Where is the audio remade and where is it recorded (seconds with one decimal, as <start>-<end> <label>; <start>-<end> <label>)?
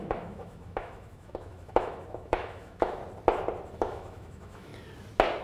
0.0-3.0 remade; 3.0-3.7 recorded; 3.7-4.7 remade; 4.7-5.4 recorded